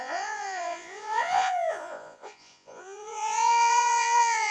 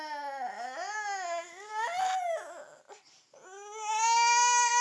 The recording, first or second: second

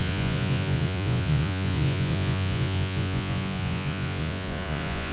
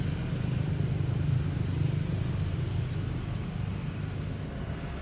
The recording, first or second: second